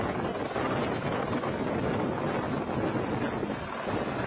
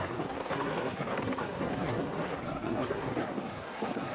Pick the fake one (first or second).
second